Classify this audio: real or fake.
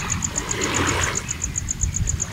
real